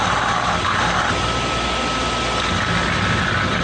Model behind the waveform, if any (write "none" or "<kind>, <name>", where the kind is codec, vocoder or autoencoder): none